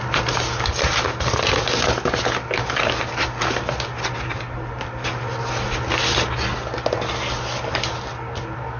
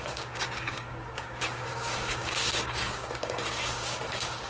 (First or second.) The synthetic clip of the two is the second